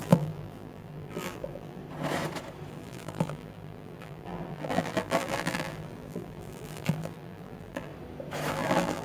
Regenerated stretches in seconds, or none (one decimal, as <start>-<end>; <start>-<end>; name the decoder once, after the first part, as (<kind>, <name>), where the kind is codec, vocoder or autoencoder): 0.0-1.8 (vocoder, BigVGAN v2); 2.7-7.9; 8.5-9.0